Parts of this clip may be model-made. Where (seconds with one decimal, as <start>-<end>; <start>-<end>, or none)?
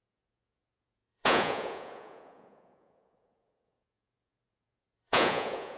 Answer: 0.0-5.8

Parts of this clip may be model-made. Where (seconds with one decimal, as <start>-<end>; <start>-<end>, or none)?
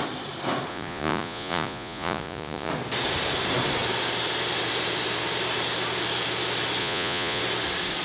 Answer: 0.7-2.7; 6.8-7.4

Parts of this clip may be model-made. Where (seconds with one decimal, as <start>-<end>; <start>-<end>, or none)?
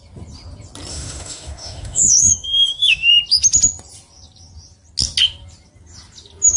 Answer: 0.9-3.1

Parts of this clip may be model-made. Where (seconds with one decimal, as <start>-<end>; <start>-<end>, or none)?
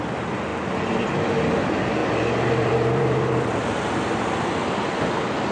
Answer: 0.0-0.5; 1.6-5.5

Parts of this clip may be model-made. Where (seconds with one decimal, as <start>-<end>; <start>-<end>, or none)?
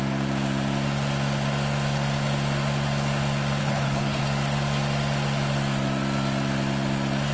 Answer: 3.6-4.2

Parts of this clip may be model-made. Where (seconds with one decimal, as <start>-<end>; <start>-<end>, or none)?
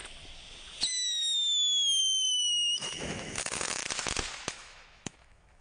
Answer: 2.0-3.8; 4.5-5.6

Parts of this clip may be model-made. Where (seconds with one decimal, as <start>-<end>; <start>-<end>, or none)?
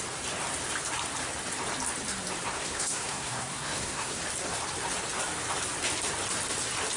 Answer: 2.6-4.2